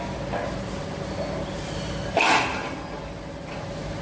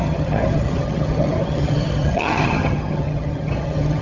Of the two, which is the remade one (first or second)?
second